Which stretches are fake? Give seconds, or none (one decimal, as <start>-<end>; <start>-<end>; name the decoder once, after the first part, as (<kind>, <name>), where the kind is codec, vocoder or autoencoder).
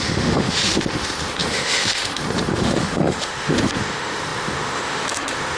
0.0-5.6 (autoencoder, DAC-VAE)